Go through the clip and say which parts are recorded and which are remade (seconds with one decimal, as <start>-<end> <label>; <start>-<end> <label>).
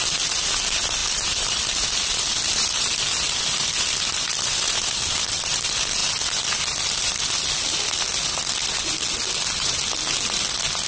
0.0-10.9 recorded